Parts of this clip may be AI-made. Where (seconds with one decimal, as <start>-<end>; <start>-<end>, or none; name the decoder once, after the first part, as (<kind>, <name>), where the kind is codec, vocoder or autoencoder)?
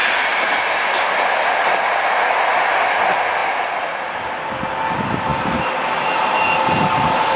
0.0-0.8 (vocoder, BigVGAN v2); 5.3-6.1